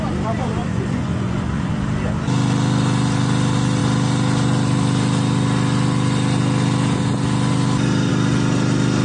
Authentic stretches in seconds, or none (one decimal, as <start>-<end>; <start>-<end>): 0.0-0.6; 1.7-9.0